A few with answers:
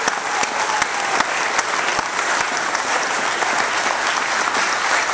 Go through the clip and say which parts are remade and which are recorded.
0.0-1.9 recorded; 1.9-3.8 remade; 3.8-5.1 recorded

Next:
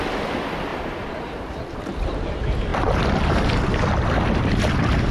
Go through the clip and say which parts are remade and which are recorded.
0.0-0.7 recorded; 0.7-1.2 remade; 1.2-5.1 recorded

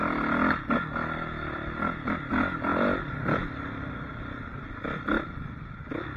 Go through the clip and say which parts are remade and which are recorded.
0.0-2.7 recorded; 2.7-4.7 remade; 4.7-6.2 recorded

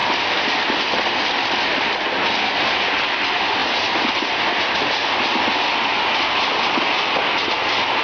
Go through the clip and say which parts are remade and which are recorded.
0.0-1.9 remade; 1.9-8.0 recorded

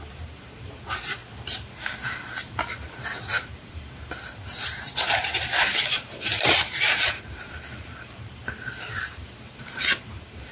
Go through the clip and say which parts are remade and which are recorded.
0.0-1.2 remade; 1.2-3.5 recorded; 3.5-5.3 remade; 5.3-6.1 recorded; 6.1-8.4 remade; 8.4-9.0 recorded; 9.0-10.5 remade

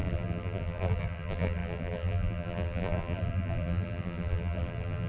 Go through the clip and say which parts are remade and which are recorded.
0.0-5.1 remade

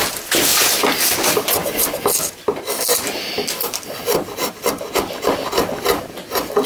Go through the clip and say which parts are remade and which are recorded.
0.0-6.7 recorded

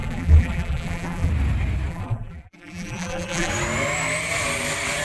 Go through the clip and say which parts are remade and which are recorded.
0.0-1.3 remade; 1.3-1.9 recorded; 1.9-3.5 remade; 3.5-5.0 recorded